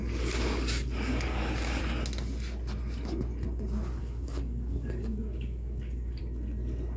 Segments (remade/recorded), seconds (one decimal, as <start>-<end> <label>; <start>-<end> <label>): 0.0-1.8 remade; 1.8-4.0 recorded; 4.0-6.2 remade; 6.2-7.0 recorded